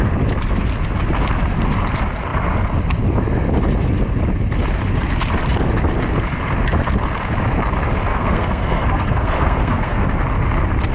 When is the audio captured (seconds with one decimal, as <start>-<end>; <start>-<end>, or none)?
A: 0.0-8.1; 10.1-10.9